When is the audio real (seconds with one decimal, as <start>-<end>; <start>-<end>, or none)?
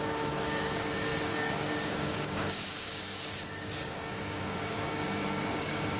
none